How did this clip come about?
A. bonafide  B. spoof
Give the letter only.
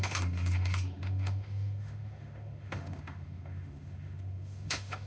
B